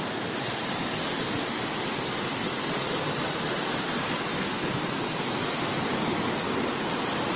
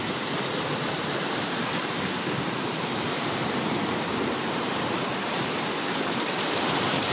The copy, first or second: second